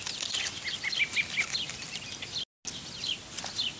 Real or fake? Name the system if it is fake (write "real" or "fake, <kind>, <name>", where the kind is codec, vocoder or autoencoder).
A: real